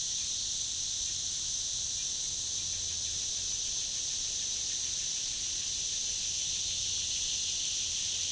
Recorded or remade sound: recorded